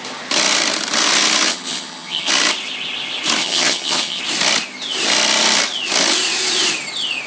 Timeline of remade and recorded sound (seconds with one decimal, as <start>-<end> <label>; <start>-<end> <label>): 0.0-1.5 recorded; 1.5-2.3 remade; 2.3-3.4 recorded; 3.4-4.2 remade; 4.2-7.3 recorded